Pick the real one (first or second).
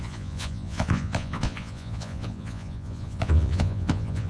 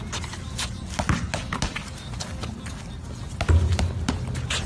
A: second